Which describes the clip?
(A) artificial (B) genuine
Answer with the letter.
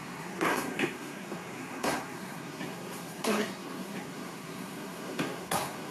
A